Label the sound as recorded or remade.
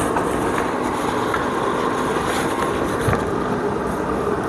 recorded